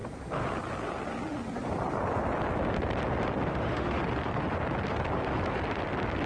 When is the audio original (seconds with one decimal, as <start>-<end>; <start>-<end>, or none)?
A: 0.0-3.5; 4.0-6.3